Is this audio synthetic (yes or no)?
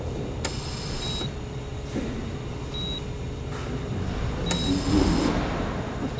no